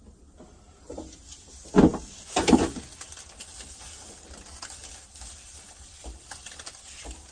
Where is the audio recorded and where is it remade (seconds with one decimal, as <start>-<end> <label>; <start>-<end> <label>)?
0.0-7.3 recorded